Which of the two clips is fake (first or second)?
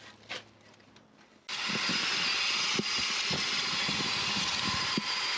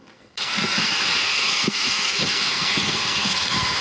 second